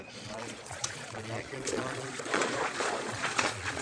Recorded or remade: remade